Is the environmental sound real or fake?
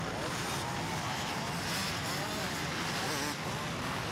real